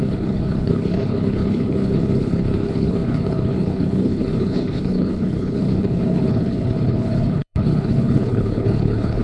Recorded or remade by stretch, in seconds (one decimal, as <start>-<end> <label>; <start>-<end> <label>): 0.0-9.2 remade